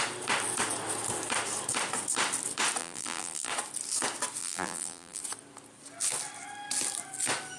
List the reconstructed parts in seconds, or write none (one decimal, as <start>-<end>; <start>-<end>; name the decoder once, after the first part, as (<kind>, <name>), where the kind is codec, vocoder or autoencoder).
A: 2.8-3.5 (vocoder, BigVGAN v2); 4.4-5.2